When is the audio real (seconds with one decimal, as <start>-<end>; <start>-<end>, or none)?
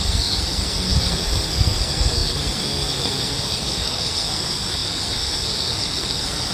none